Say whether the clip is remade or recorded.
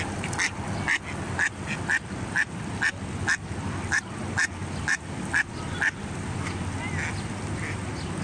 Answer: recorded